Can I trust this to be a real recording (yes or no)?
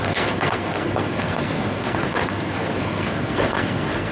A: no